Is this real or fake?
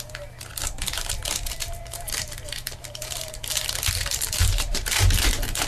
fake